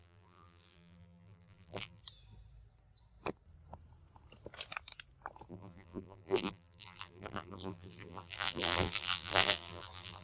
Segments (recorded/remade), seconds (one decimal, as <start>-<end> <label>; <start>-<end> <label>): 0.0-2.0 remade; 2.0-5.5 recorded; 5.5-10.2 remade